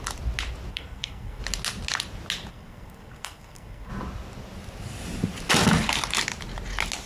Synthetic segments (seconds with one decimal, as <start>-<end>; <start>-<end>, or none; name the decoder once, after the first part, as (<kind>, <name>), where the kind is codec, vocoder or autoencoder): 0.7-1.4 (codec, SNAC); 2.5-3.9